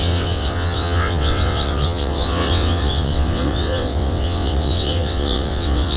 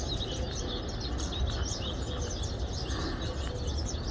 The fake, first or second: first